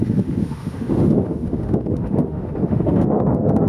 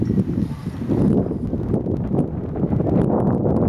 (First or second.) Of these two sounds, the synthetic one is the first